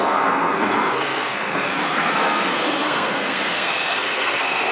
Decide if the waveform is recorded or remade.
remade